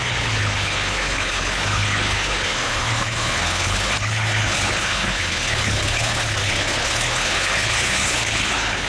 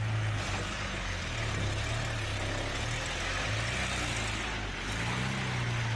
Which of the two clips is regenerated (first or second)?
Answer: first